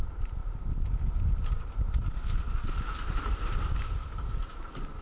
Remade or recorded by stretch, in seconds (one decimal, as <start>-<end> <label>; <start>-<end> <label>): 0.0-5.0 recorded